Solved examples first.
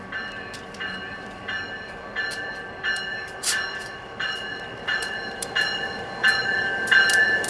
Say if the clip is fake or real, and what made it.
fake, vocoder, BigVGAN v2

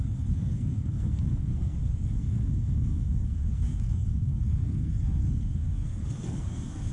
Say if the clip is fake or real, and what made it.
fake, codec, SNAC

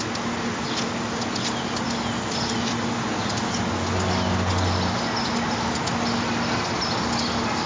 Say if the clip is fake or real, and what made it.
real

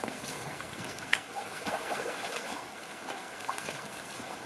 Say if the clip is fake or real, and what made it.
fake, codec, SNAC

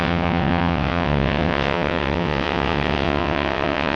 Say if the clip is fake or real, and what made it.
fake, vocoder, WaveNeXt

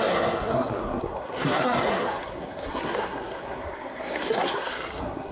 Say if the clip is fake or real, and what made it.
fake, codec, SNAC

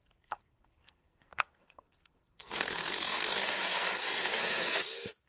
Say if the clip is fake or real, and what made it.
fake, codec, SNAC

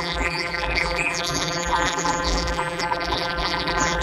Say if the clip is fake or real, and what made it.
fake, vocoder, BigVGAN v2